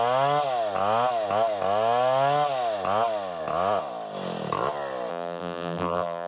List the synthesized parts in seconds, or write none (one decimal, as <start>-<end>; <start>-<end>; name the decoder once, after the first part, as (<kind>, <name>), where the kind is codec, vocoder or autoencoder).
5.1-6.3 (vocoder, BigVGAN v2)